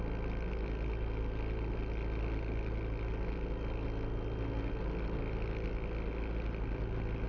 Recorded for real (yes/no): yes